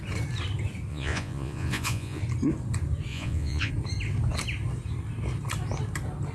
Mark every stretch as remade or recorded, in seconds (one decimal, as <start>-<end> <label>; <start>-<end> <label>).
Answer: 0.0-0.9 recorded; 0.9-2.2 remade; 2.2-3.1 recorded; 3.1-3.7 remade; 3.7-6.3 recorded